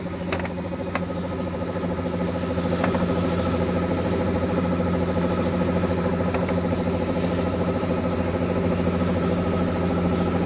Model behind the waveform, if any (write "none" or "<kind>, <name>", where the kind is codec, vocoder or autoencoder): none